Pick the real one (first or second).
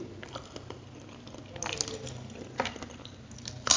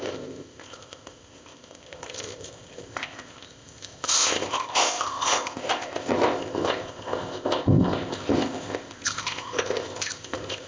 first